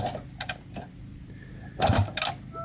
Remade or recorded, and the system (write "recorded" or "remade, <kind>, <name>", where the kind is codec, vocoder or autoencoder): recorded